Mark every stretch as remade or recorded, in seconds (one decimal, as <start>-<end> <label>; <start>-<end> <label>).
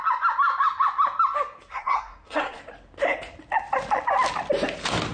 0.0-1.7 recorded; 1.7-2.6 remade; 2.6-5.1 recorded